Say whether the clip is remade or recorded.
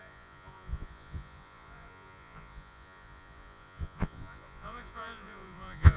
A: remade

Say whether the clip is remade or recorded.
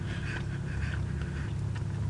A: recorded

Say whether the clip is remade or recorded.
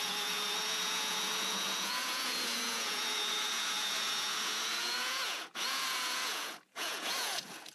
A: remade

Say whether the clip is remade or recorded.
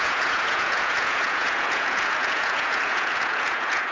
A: remade